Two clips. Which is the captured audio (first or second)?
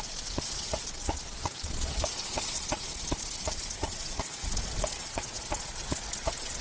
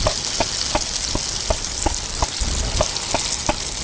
second